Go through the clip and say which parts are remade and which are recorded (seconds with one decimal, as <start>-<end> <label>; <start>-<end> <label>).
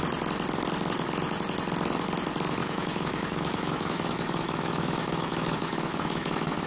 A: 0.0-2.6 recorded; 2.6-6.7 remade